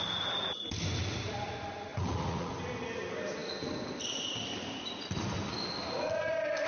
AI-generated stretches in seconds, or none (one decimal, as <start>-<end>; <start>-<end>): 1.9-2.5